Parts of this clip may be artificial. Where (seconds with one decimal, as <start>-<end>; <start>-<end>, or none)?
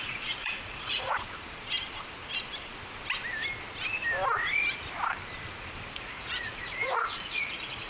0.0-1.2; 5.9-7.9